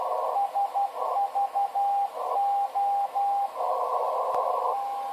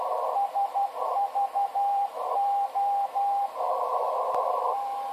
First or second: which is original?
first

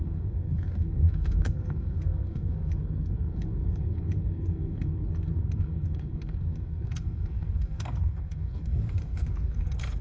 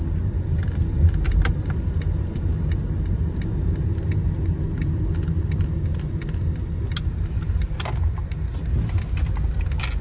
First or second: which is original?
second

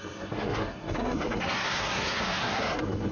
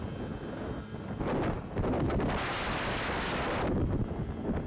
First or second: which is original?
second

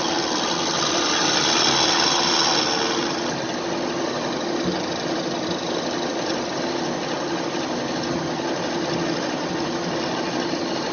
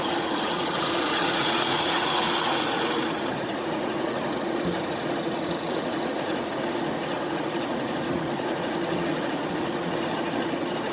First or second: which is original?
first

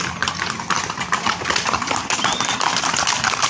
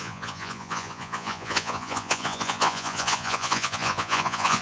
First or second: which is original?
first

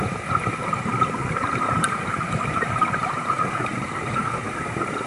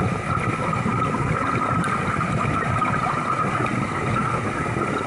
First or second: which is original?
second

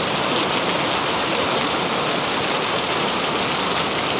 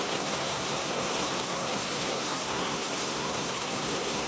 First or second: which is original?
first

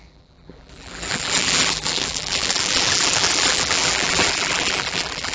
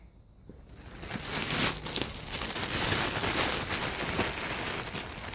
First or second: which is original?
second